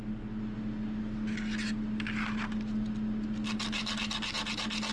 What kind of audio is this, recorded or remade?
recorded